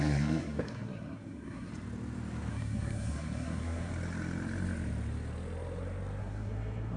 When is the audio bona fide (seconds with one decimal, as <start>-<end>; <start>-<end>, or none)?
1.7-2.5; 3.9-6.2